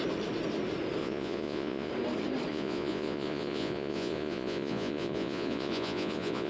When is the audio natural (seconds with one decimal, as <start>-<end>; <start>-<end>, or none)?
0.0-1.0; 1.9-2.5